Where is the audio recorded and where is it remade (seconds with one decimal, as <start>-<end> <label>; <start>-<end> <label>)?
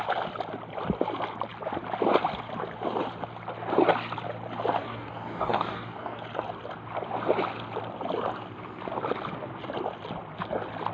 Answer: 0.0-4.8 recorded; 4.8-6.2 remade; 6.2-10.9 recorded